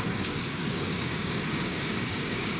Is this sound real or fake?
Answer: fake